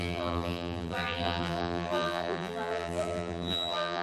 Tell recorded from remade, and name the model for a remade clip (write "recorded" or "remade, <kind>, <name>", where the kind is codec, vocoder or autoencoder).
remade, vocoder, BigVGAN v2